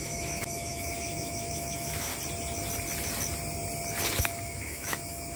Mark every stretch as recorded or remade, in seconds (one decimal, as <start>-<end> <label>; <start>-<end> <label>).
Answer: 0.0-2.1 remade; 2.1-4.2 recorded; 4.2-5.4 remade